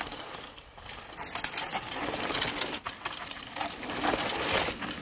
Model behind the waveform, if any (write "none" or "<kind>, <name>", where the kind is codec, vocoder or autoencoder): none